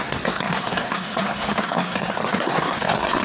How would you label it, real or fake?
fake